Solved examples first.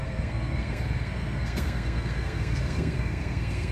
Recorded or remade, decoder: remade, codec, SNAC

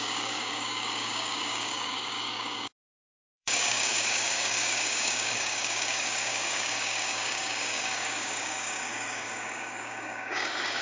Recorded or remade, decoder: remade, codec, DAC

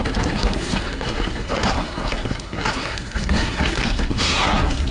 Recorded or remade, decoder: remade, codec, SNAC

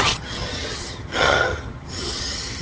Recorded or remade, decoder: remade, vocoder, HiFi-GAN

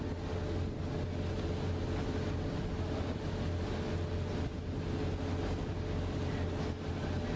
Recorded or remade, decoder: recorded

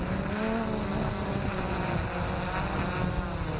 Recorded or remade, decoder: recorded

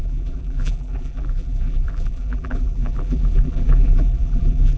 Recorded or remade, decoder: remade, vocoder, BigVGAN v2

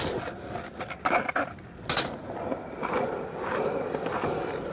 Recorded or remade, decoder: recorded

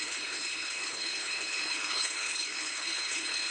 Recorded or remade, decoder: remade, codec, HILCodec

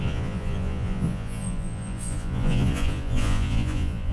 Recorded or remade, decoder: remade, vocoder, Vocos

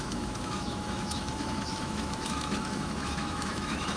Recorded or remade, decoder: remade, autoencoder, DAC-VAE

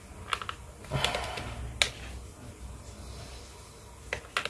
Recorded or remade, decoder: recorded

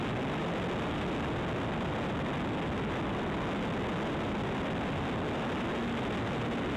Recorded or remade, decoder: recorded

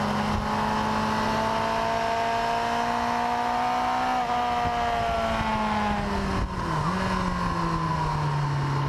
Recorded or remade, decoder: recorded